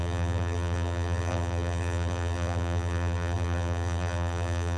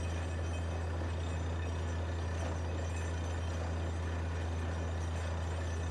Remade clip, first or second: first